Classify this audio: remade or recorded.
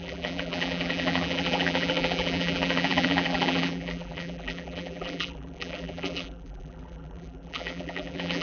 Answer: remade